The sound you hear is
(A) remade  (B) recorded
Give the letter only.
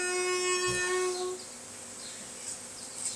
B